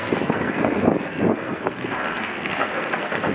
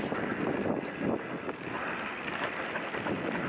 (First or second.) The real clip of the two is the second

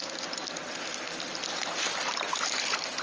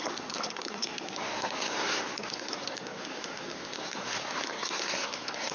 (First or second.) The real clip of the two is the first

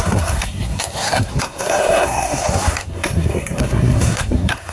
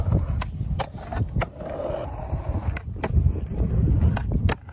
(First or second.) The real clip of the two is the second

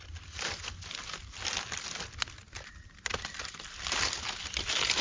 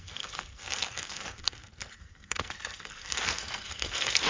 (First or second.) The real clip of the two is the first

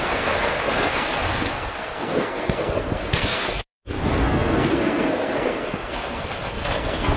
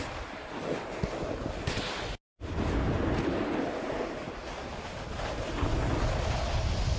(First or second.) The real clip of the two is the second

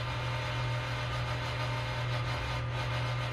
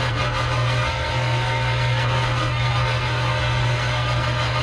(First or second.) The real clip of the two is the first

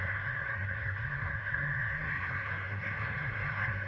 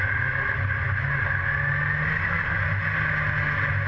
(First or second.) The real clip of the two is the second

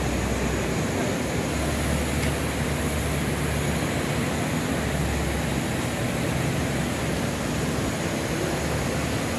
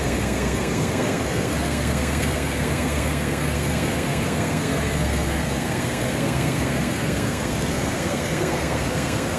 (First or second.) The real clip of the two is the first